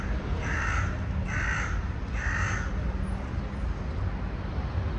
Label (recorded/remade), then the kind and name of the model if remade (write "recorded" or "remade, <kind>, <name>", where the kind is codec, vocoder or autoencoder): recorded